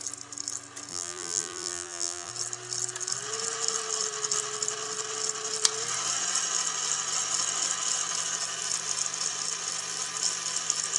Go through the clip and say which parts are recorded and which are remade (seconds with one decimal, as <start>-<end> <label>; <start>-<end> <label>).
0.0-0.9 recorded; 0.9-2.3 remade; 2.3-11.0 recorded